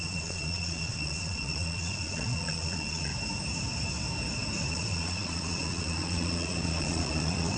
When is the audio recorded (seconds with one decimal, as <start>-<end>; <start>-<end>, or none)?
3.1-4.7